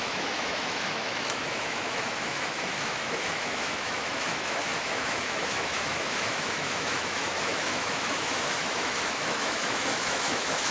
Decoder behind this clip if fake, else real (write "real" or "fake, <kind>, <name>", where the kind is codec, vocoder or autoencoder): fake, autoencoder, DAC-VAE